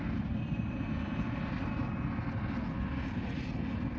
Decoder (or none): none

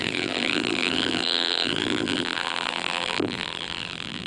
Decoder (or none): vocoder, BigVGAN v2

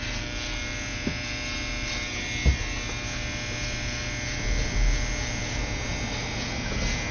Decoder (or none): none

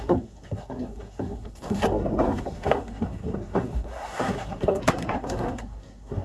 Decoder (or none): codec, SNAC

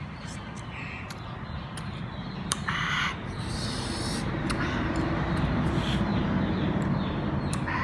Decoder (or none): vocoder, BigVGAN v2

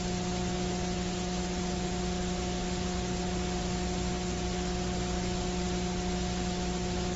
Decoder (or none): none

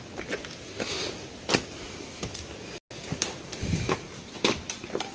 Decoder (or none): none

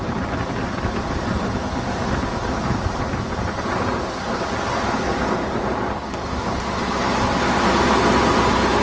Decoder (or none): none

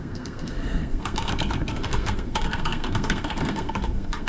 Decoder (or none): codec, SNAC